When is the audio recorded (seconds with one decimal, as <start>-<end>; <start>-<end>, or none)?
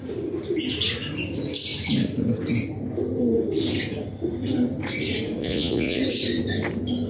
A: 0.0-5.4; 6.0-7.1